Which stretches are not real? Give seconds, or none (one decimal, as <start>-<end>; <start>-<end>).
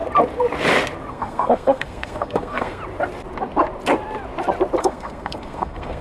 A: 1.1-2.8; 4.8-6.0